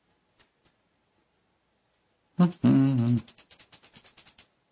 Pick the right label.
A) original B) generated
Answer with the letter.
A